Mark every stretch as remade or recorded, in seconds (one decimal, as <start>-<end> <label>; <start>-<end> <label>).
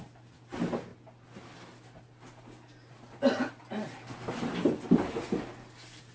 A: 0.0-6.1 recorded